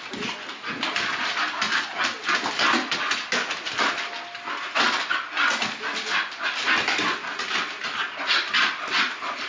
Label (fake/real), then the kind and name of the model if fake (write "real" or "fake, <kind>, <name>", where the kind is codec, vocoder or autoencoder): real